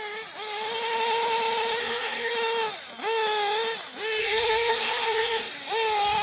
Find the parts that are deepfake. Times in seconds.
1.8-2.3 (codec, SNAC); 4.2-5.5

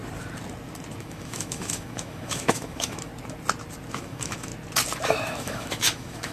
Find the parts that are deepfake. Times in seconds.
1.0-3.1 (autoencoder, DAC-VAE); 3.9-4.5; 5.0-6.3

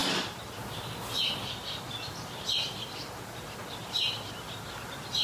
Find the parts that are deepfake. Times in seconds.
none